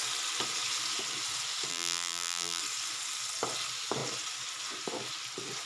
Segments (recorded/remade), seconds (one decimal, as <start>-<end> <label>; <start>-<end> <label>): 0.0-1.7 recorded; 1.7-2.6 remade; 2.6-5.7 recorded